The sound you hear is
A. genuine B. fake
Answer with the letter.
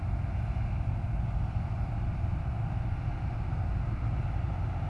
A